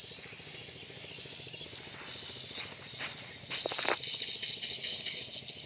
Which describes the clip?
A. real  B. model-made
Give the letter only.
A